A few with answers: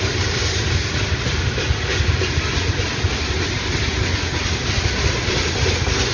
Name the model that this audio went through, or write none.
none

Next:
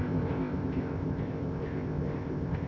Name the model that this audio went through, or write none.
codec, ZipCodec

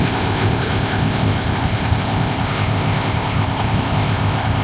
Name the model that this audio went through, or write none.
codec, ZipCodec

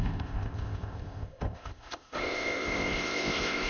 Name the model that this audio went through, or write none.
codec, ZipCodec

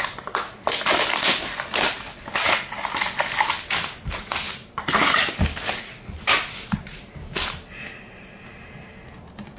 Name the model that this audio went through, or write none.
none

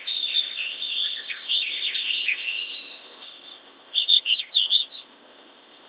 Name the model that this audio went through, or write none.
codec, ZipCodec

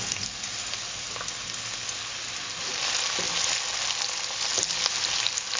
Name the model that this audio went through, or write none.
none